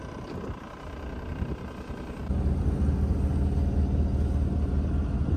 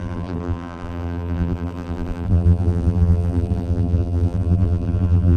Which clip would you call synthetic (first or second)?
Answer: second